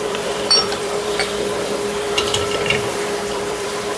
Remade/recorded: remade